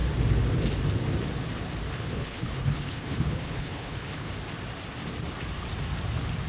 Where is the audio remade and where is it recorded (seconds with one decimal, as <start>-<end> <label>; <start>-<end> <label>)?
0.0-2.0 recorded; 2.0-4.3 remade; 4.3-6.5 recorded